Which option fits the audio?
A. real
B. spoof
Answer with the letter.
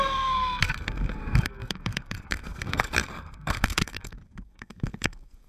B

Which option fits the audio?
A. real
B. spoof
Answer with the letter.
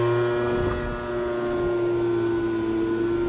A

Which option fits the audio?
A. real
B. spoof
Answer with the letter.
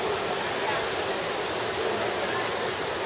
A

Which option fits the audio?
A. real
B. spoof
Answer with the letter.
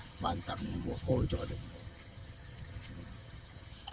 B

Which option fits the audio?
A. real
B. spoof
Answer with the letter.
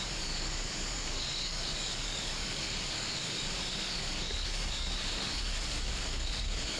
B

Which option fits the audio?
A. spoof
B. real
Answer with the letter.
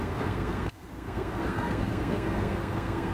A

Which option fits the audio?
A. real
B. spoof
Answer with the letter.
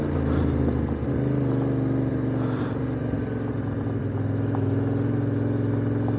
A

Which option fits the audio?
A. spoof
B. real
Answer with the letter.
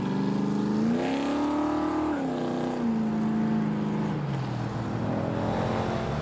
B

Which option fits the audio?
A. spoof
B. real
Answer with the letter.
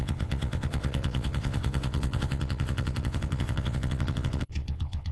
A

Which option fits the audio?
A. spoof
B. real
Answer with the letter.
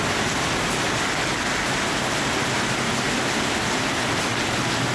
B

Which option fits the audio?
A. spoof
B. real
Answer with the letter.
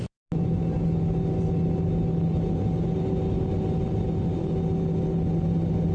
B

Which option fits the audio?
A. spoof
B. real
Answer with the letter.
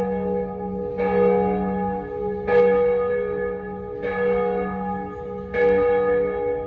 B